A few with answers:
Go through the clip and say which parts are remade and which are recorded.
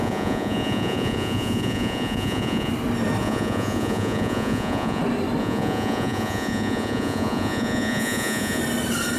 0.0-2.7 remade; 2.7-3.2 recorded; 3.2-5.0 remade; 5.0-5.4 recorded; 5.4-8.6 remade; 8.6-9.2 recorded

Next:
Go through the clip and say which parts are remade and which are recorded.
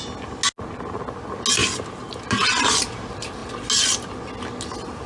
0.0-5.1 recorded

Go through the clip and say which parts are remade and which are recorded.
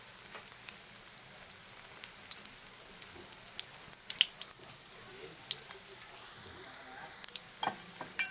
0.0-8.3 recorded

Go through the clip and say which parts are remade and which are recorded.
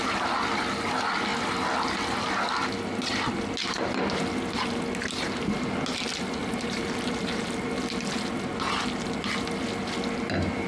0.0-6.4 recorded; 6.4-7.7 remade; 7.7-10.7 recorded